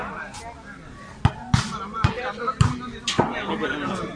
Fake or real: real